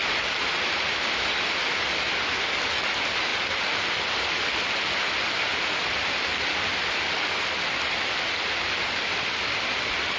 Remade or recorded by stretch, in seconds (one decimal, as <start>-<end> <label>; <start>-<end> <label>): 0.0-10.2 recorded

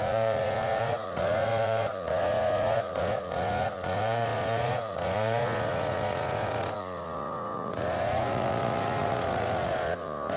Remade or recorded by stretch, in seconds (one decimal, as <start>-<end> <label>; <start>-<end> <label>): 0.0-10.4 remade